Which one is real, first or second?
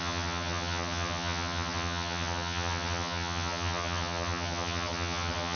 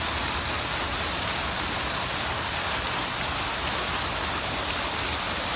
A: second